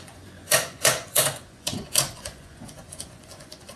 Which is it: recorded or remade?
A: remade